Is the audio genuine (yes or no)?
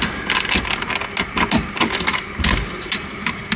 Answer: yes